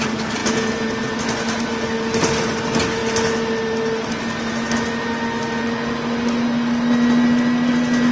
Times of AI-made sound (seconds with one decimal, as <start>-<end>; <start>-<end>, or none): 0.4-1.2